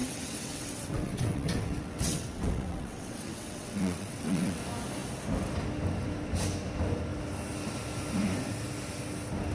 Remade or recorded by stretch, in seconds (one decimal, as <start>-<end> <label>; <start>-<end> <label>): 0.0-4.6 remade; 4.6-9.5 recorded